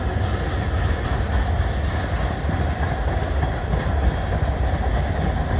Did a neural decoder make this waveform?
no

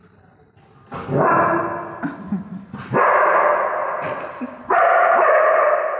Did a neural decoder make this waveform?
no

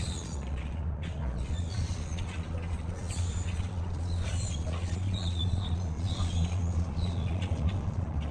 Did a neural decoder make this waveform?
yes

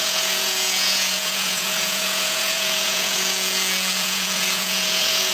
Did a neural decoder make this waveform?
yes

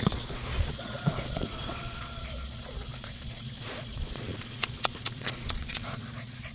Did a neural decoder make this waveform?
yes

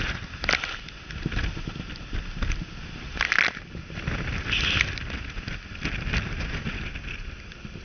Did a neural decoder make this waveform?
no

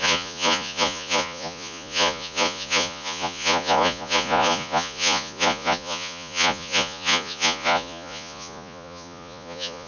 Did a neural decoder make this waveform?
yes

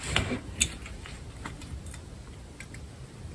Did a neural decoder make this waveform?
no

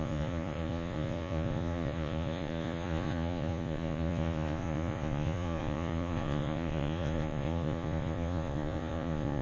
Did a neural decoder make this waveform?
yes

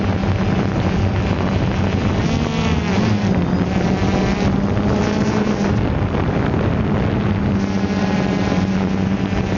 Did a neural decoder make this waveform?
no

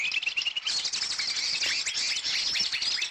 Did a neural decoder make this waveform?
no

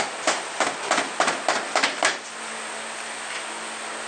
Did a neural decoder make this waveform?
no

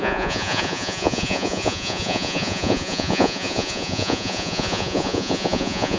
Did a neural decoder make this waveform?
yes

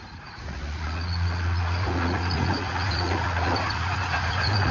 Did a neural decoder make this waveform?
yes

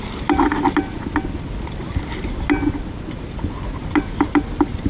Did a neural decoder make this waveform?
no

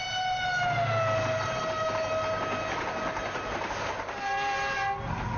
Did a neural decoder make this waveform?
no